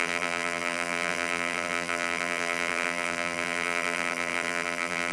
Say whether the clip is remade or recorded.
remade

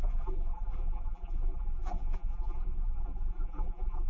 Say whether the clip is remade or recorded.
remade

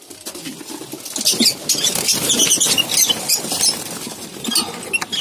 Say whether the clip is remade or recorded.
recorded